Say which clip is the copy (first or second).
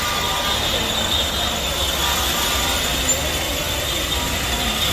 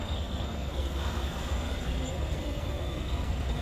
second